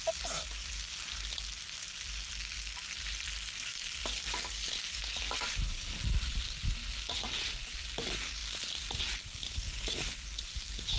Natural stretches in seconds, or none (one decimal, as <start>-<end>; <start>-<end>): 0.0-6.3; 8.0-11.0